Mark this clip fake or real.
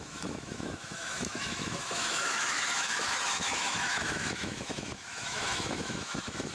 fake